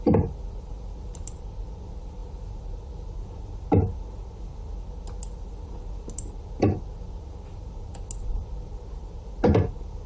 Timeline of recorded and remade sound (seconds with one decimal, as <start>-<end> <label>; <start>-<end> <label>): 0.0-10.1 recorded